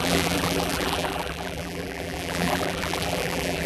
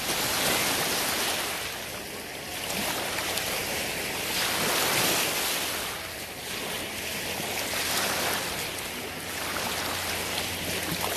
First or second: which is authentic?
second